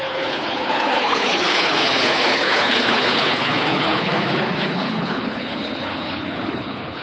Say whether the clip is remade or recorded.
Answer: remade